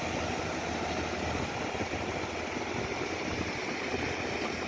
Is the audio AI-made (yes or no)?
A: no